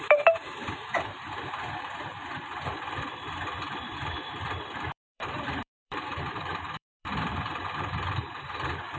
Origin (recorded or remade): remade